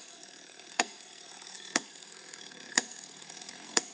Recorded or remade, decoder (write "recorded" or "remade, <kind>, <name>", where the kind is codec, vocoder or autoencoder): remade, codec, SNAC